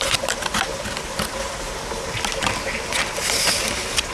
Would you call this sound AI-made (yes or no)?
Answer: no